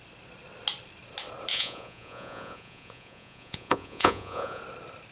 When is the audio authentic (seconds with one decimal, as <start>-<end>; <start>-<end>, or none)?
0.0-1.5; 4.6-5.1